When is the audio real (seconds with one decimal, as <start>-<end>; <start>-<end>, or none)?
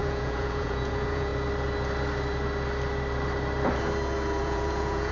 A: 1.3-4.4